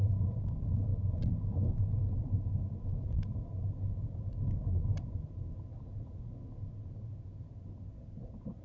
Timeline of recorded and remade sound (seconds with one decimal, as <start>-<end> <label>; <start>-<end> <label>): 0.0-8.6 recorded